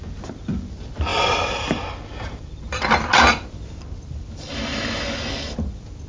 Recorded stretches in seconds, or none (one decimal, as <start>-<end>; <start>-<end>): 0.0-6.1